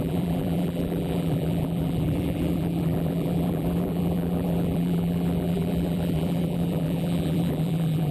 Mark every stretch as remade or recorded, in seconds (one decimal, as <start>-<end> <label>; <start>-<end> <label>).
0.0-8.1 remade